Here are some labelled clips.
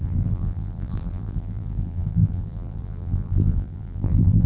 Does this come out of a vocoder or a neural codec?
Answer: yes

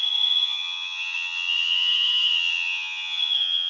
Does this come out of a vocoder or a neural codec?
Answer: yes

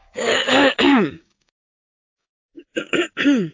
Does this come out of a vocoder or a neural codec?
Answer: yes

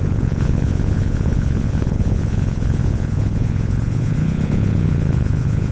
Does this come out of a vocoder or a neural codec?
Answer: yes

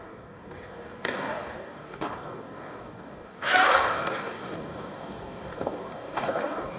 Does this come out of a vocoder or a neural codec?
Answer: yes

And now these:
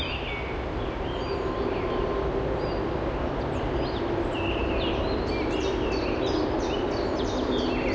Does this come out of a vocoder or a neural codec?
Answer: no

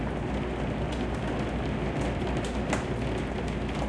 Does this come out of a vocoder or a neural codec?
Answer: no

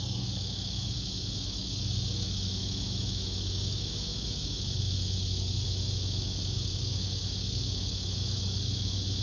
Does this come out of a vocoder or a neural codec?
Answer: yes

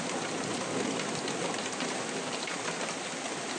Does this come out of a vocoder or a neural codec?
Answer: no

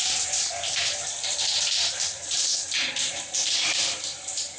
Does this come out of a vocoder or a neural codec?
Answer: yes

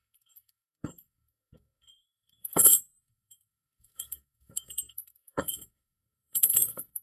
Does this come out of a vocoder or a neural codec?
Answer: yes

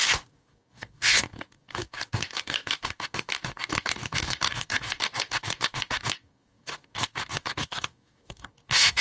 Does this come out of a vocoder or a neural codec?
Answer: yes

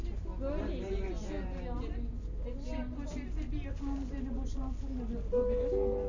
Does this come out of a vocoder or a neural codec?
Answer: no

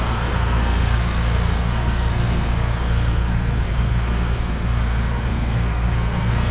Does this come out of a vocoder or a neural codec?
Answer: yes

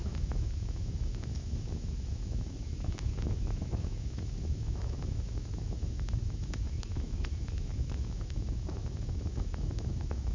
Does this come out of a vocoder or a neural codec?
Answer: yes